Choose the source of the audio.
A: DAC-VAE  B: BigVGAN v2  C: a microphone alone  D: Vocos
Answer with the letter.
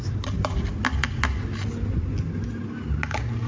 C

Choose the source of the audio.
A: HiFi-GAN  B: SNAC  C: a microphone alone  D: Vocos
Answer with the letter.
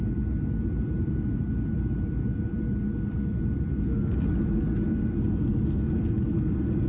C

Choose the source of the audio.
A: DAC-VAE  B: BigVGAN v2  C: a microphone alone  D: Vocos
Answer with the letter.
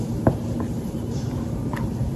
B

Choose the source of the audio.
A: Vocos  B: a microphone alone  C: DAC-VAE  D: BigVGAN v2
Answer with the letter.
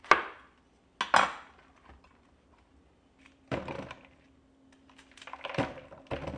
B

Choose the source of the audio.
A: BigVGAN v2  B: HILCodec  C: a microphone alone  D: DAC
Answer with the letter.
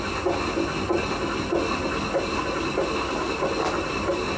C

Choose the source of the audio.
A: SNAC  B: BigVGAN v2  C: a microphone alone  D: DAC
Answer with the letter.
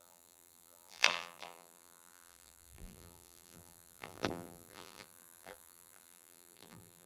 B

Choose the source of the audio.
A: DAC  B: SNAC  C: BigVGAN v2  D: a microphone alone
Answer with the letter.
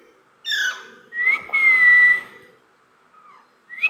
D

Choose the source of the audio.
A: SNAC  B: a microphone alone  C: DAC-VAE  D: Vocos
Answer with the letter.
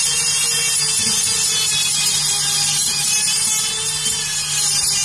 B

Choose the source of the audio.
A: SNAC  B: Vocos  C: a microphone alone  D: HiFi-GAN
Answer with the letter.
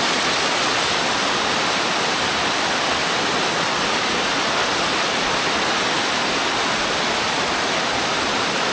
C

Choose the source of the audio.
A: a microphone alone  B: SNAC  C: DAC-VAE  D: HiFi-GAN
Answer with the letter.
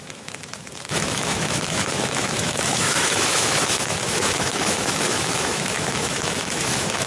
C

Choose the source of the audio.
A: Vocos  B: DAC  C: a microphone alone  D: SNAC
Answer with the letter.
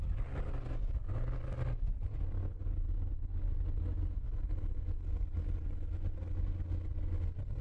C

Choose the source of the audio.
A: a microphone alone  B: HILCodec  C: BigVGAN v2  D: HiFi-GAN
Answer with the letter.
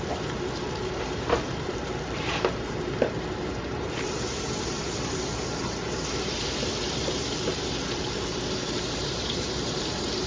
C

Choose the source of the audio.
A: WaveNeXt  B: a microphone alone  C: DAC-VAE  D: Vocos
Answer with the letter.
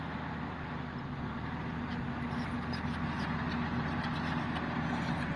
B